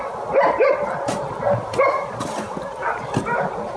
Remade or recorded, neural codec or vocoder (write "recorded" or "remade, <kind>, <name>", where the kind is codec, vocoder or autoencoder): recorded